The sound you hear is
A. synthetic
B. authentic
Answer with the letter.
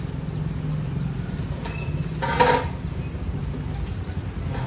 B